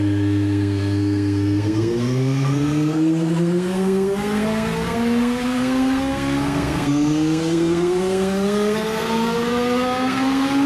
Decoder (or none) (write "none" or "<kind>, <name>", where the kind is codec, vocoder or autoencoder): codec, SNAC